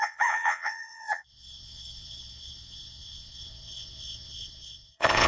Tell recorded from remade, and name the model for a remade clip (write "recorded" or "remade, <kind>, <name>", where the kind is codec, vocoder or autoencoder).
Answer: remade, vocoder, WaveNeXt